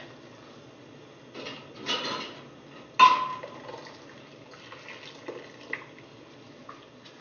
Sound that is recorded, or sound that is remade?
recorded